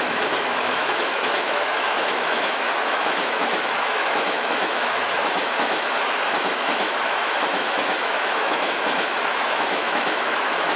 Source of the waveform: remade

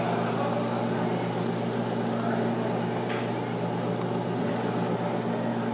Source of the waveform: recorded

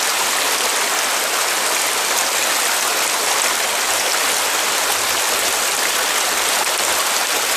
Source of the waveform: recorded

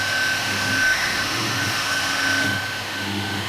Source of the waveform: remade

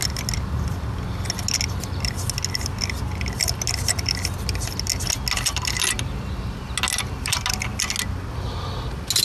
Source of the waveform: recorded